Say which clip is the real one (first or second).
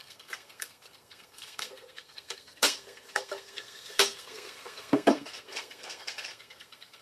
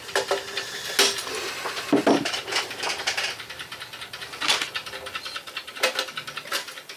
second